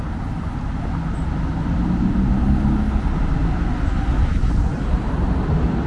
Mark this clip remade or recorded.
recorded